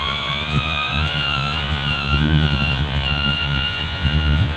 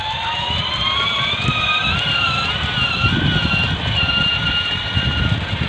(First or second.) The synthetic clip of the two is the first